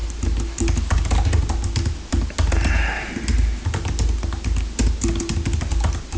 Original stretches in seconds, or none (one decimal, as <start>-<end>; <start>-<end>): 0.0-6.2

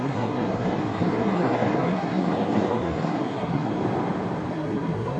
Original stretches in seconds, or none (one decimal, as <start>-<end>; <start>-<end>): 3.7-4.5

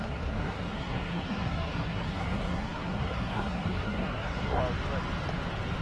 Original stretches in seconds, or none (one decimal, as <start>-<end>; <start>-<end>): 4.6-5.8

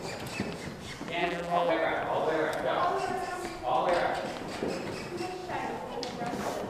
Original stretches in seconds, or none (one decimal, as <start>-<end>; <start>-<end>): 0.0-1.2; 1.7-6.7

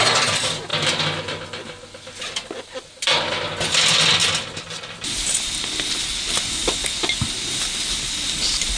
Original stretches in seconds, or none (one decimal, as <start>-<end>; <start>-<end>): 0.0-8.8

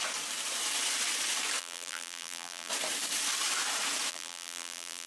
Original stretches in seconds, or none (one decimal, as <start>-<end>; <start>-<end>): 0.0-1.6; 2.7-4.1

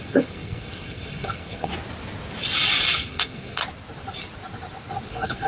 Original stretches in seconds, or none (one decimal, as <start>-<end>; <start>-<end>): 1.7-2.9; 3.6-5.1

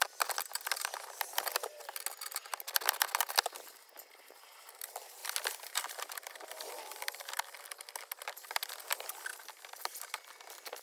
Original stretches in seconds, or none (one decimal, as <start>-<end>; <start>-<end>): 0.0-5.2; 8.7-9.3; 10.3-10.8